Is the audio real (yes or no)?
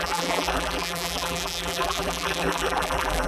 no